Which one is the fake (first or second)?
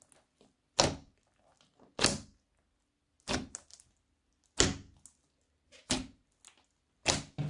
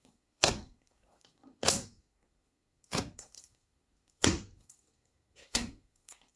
second